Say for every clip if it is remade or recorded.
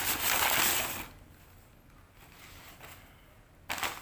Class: recorded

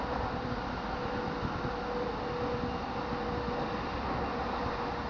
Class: recorded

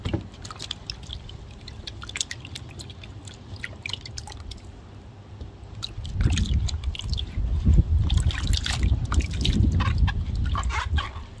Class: recorded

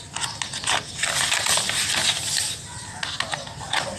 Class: recorded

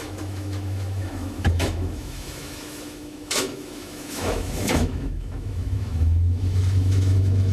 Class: remade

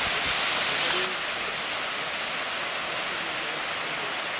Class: recorded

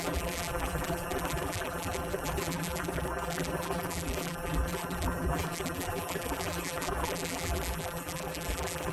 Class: remade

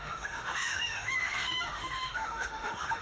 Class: remade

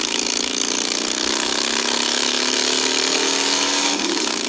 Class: remade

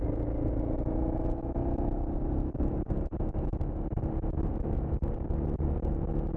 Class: recorded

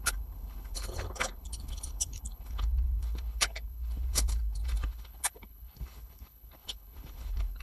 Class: remade